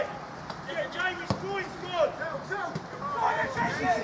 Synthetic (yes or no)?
no